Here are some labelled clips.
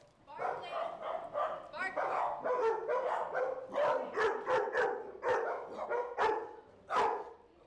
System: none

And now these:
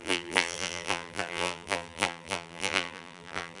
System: vocoder, BigVGAN v2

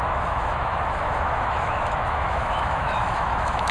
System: autoencoder, DAC-VAE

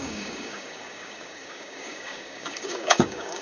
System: codec, DAC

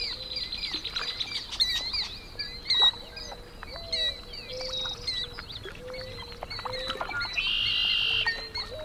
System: none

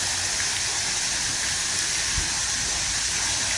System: none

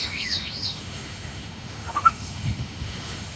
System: autoencoder, DAC-VAE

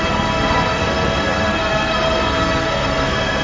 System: codec, SNAC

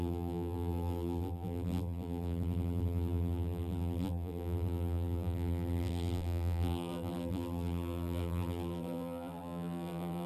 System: vocoder, BigVGAN v2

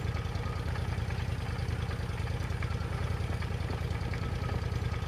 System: none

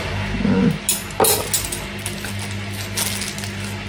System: none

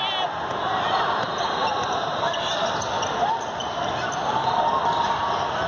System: none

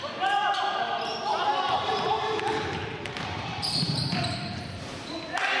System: vocoder, BigVGAN v2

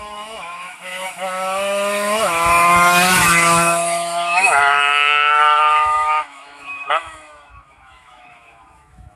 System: autoencoder, DAC-VAE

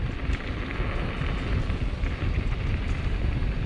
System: none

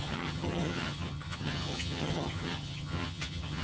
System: vocoder, HiFi-GAN